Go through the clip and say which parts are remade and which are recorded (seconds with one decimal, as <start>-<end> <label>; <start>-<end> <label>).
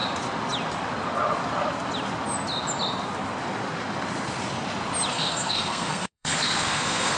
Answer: 0.0-5.1 recorded; 5.1-7.2 remade